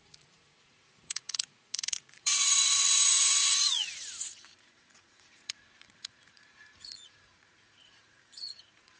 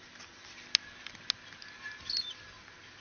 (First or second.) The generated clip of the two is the first